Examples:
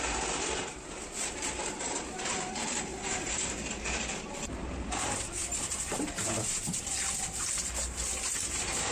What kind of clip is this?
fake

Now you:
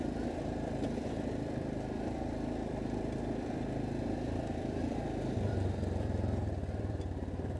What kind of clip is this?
fake